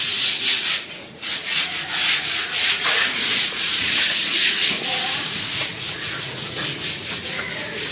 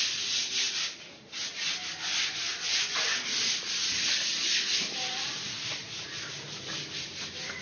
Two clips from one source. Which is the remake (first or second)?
first